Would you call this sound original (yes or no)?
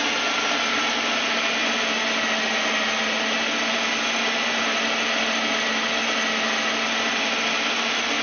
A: yes